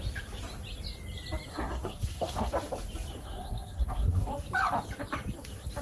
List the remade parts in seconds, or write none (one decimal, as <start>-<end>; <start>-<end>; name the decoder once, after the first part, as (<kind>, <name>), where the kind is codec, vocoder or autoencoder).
1.5-2.5 (codec, SNAC); 3.2-4.3

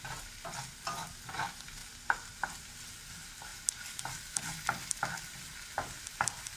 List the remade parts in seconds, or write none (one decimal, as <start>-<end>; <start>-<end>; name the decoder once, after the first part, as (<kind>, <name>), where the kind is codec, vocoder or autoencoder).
none

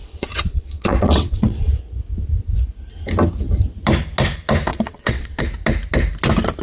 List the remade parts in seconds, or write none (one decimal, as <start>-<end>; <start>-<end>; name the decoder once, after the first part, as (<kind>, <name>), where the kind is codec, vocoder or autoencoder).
0.0-1.7 (vocoder, WaveNeXt); 4.7-5.4

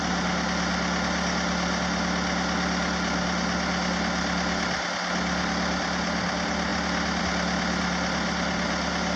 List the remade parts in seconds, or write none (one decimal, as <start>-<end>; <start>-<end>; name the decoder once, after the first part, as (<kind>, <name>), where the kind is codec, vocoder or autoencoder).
none